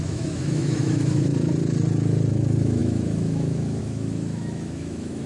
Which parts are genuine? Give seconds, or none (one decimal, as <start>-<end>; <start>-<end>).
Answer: 1.3-2.3